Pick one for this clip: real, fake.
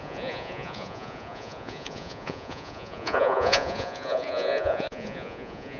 fake